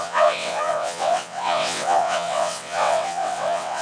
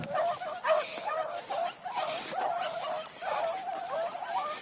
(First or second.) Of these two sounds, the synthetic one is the first